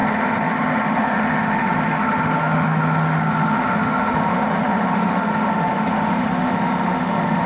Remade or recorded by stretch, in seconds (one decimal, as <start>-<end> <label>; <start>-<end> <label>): 0.0-7.5 remade